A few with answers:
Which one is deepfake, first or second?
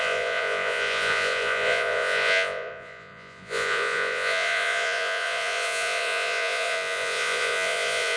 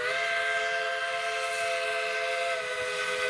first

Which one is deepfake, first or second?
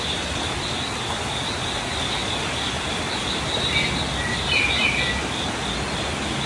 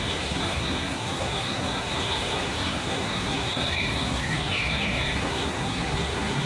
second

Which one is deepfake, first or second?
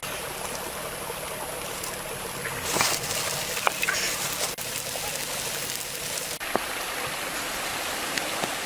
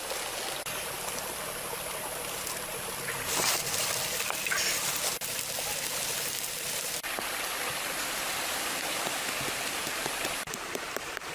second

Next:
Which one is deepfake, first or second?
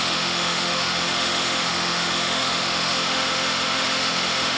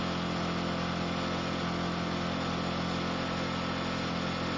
first